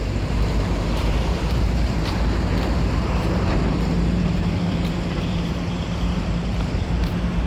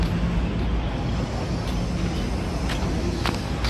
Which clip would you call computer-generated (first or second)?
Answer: first